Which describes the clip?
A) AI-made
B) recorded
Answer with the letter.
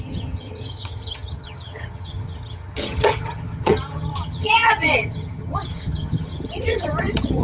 A